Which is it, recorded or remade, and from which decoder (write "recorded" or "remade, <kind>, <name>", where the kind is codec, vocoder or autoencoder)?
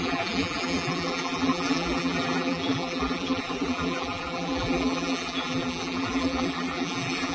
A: remade, vocoder, BigVGAN v2